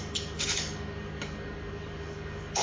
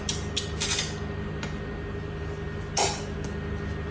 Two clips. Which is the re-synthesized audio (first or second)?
first